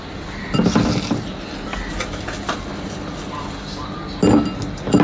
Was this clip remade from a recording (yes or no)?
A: no